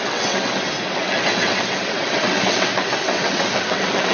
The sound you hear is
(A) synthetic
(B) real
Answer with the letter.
A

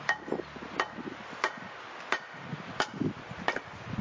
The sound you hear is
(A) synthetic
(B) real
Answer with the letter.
B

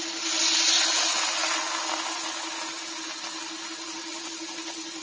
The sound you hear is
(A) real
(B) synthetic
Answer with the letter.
A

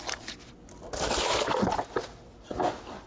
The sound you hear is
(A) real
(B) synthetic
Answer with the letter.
A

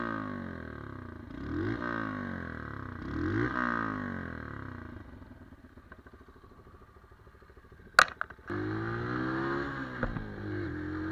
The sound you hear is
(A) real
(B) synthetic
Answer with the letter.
A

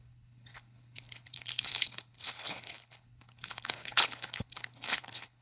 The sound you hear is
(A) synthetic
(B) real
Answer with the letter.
A